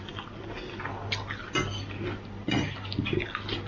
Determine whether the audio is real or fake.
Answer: real